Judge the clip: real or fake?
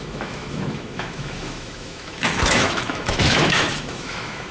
fake